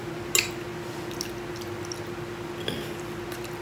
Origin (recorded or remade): recorded